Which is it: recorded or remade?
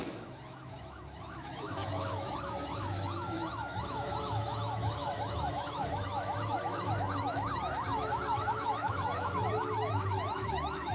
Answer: remade